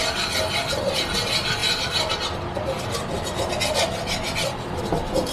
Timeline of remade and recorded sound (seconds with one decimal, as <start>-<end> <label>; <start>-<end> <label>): 0.0-5.3 recorded

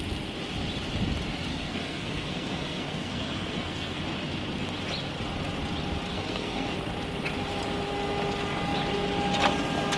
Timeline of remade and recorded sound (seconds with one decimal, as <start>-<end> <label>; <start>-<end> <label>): 0.0-1.5 recorded; 1.5-4.0 remade; 4.0-6.1 recorded; 6.1-6.8 remade; 6.8-10.0 recorded

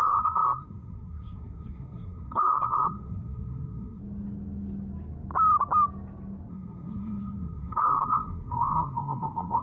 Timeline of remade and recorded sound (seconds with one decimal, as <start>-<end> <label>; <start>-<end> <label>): 0.0-4.0 remade; 4.0-6.5 recorded; 6.5-9.6 remade

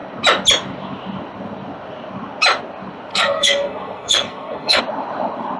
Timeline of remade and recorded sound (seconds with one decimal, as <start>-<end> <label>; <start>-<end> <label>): 0.0-3.1 recorded; 3.1-4.8 remade; 4.8-5.6 recorded

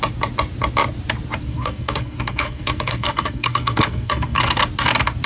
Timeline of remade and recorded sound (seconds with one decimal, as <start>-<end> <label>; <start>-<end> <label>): 0.0-1.4 recorded; 1.4-4.6 remade; 4.6-5.3 recorded